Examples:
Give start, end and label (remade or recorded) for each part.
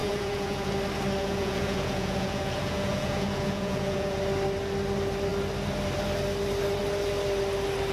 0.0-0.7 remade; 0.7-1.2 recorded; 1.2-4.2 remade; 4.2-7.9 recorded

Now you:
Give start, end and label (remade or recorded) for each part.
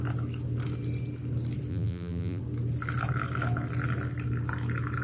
0.0-1.7 recorded; 1.7-2.4 remade; 2.4-5.0 recorded